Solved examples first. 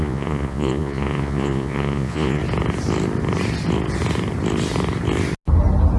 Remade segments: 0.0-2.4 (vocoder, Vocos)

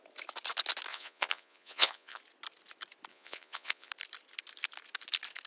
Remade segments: 0.9-2.2 (vocoder, Vocos); 3.1-3.9

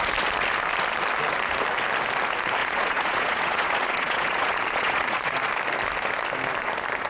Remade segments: 2.6-5.5 (vocoder, Vocos)

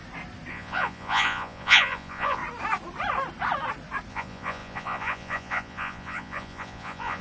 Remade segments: 0.5-2.4 (vocoder, Vocos); 4.1-7.2

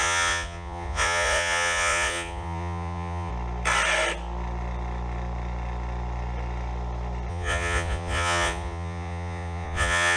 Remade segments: 0.0-3.3 (vocoder, Vocos); 7.3-10.2

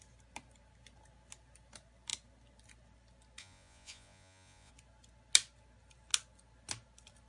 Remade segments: 3.4-4.7 (vocoder, Vocos)

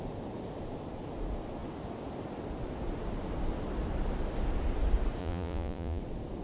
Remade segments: 5.2-6.0 (vocoder, Vocos)